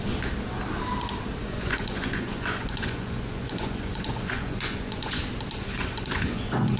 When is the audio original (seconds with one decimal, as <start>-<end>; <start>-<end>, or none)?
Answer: 0.0-1.4; 5.2-5.7